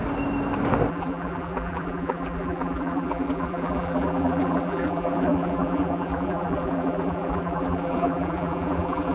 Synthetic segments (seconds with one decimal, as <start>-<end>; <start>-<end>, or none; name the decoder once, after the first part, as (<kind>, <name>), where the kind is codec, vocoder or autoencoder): 0.9-9.1 (vocoder, BigVGAN v2)